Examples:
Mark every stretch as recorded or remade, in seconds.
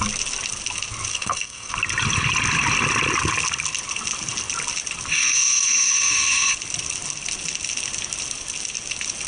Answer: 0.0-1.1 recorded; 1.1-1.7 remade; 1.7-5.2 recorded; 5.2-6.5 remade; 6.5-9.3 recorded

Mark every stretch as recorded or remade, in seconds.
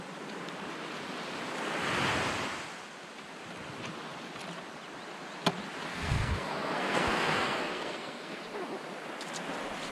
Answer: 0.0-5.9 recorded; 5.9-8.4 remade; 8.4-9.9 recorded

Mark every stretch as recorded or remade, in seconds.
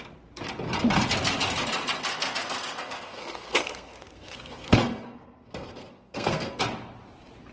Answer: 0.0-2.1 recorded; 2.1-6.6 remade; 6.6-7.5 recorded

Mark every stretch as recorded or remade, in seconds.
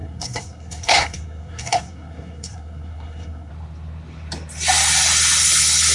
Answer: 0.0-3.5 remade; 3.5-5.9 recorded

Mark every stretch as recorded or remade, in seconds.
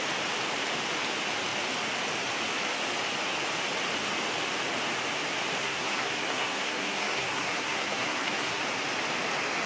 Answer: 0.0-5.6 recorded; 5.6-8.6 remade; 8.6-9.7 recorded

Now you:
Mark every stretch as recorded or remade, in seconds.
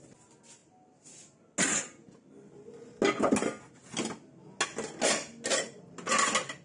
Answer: 0.0-6.6 recorded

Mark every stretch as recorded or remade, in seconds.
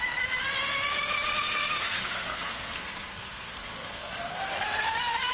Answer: 0.0-1.8 recorded; 1.8-4.4 remade; 4.4-5.3 recorded